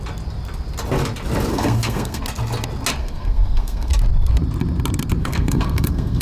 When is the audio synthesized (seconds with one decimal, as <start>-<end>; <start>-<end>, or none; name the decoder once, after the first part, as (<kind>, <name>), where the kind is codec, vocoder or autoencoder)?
1.5-2.2 (codec, SNAC); 3.0-3.9; 5.2-6.2